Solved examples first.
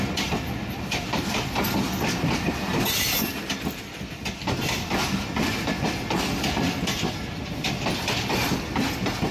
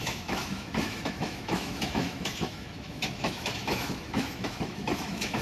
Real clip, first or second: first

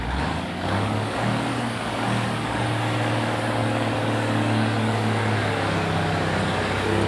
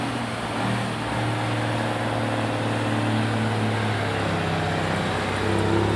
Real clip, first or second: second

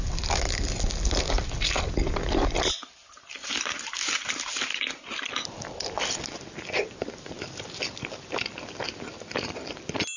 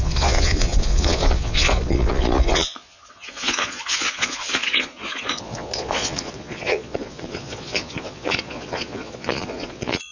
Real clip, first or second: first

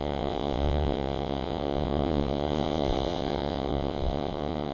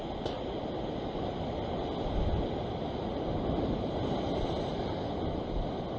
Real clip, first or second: second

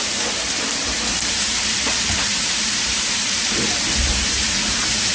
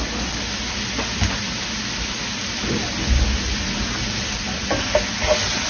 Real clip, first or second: second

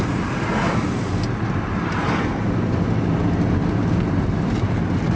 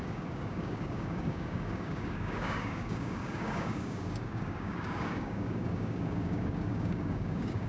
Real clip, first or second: first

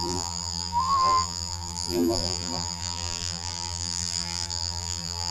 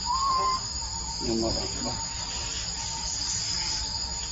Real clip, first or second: second